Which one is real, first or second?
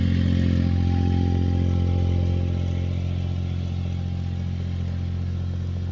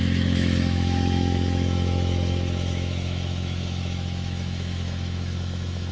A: first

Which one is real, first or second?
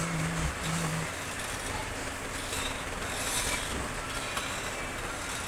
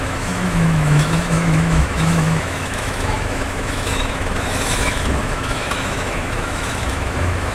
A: first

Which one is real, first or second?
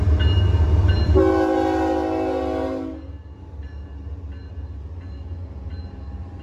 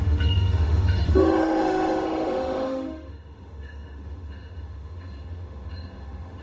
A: first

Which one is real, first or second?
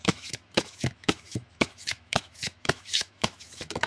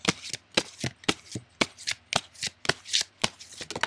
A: second